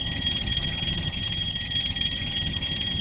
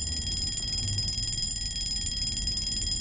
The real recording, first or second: second